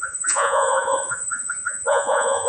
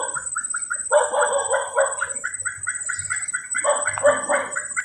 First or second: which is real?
second